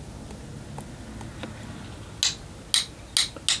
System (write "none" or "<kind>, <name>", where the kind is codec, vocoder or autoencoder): none